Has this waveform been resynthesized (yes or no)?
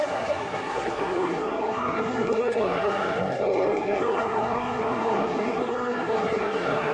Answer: yes